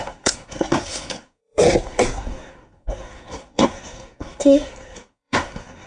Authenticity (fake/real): fake